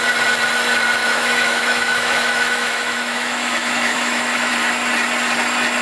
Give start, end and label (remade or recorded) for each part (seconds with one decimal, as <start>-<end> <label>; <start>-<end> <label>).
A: 0.0-1.0 recorded; 1.0-4.5 remade; 4.5-5.8 recorded